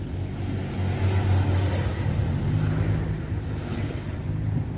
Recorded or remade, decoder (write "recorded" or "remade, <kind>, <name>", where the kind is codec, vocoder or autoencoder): recorded